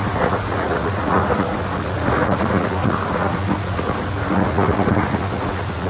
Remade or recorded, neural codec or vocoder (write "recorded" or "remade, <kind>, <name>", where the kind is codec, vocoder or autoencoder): remade, vocoder, Vocos